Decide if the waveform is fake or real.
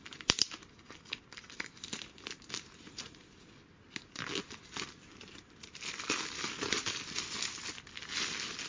real